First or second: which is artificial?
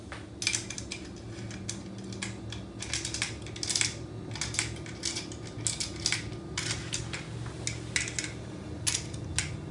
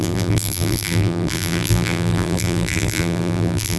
second